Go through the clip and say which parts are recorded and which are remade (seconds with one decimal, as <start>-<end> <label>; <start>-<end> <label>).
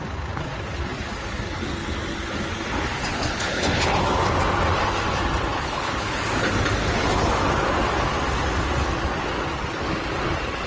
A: 0.0-3.1 recorded; 3.1-4.0 remade; 4.0-5.5 recorded; 5.5-6.2 remade; 6.2-10.7 recorded